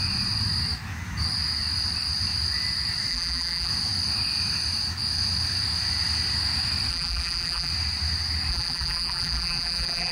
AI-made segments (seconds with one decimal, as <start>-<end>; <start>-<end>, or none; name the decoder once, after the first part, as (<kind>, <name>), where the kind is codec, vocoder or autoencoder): 3.1-3.7 (vocoder, BigVGAN v2); 6.9-7.7; 8.5-10.1

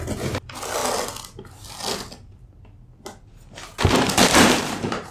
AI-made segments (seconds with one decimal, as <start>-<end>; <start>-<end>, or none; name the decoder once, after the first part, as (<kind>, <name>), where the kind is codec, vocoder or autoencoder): 4.3-5.1 (vocoder, BigVGAN v2)

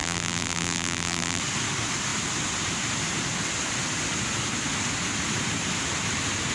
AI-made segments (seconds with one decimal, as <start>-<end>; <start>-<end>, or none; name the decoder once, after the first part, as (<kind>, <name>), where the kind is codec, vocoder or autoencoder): 0.0-1.4 (vocoder, BigVGAN v2)